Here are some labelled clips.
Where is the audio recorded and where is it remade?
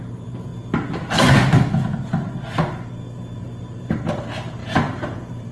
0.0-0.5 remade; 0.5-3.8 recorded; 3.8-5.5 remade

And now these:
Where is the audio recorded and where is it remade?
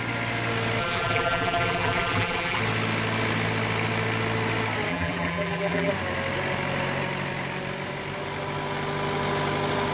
0.0-0.8 recorded; 0.8-2.6 remade; 2.6-4.9 recorded; 4.9-5.9 remade; 5.9-9.9 recorded